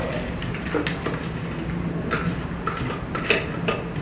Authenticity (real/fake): real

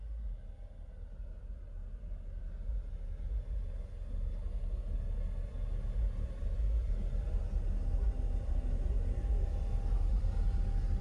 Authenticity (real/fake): real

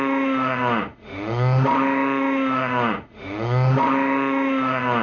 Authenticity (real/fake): fake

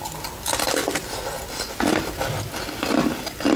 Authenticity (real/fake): real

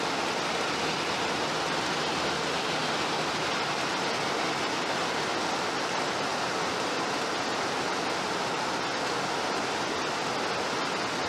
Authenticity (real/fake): real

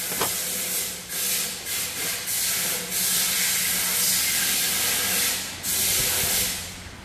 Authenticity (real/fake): real